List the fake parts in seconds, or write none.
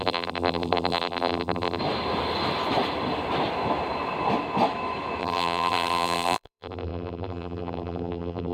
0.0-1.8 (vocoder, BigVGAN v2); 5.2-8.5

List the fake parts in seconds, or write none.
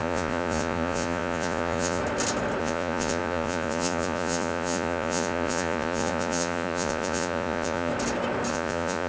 0.0-2.0 (vocoder, Vocos); 2.6-7.9; 8.5-9.1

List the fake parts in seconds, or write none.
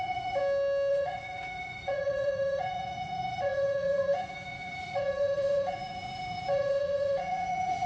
0.0-0.4 (vocoder, Vocos); 0.9-7.9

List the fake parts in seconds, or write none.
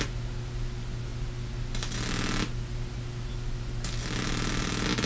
none